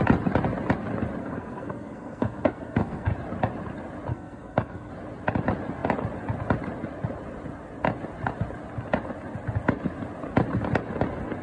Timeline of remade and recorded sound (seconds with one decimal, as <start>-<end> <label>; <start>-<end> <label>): 0.0-1.2 recorded; 1.2-3.1 remade; 3.1-4.1 recorded; 4.1-4.9 remade; 4.9-11.4 recorded